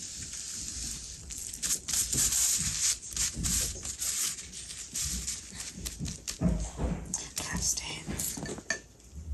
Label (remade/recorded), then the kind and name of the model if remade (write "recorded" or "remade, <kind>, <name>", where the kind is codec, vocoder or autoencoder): recorded